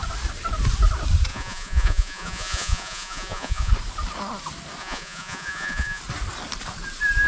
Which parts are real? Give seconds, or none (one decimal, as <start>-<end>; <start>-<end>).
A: 0.0-1.3; 3.7-4.8; 6.0-7.3